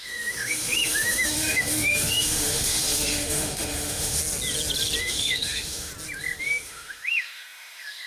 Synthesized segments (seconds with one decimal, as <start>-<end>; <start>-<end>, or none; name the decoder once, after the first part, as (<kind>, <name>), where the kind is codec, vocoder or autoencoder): 0.0-4.2 (autoencoder, DAC-VAE); 5.0-5.9; 6.4-8.1